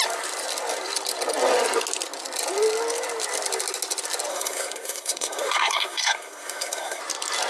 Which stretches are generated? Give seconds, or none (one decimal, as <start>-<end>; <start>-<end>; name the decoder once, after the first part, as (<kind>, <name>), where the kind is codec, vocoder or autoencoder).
4.3-7.0 (codec, SNAC)